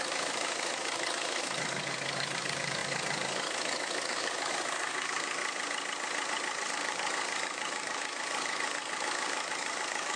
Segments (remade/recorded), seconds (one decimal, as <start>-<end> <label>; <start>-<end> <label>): 0.0-5.4 remade; 5.4-6.7 recorded; 6.7-10.2 remade